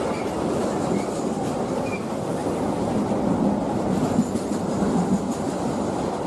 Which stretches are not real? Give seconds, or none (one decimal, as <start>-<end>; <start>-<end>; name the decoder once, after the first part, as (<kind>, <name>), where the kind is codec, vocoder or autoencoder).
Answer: none